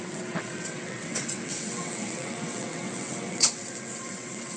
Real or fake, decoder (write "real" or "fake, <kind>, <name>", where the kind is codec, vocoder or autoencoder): fake, vocoder, WaveNeXt